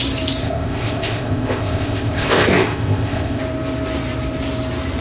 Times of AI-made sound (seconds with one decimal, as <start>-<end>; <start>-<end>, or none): 0.4-3.4